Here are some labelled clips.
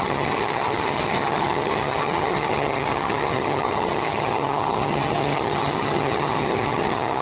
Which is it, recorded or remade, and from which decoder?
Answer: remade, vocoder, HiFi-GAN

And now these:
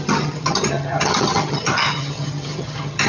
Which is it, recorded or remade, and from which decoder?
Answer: remade, vocoder, HiFi-GAN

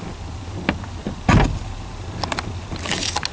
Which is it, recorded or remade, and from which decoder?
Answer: recorded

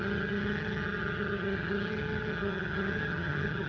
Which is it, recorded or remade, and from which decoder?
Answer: remade, vocoder, HiFi-GAN